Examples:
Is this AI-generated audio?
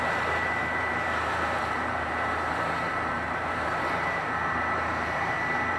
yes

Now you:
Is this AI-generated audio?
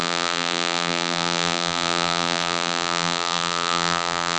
yes